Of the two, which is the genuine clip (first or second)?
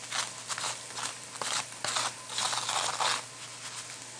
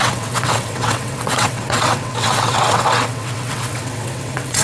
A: first